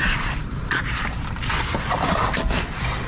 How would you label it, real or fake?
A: real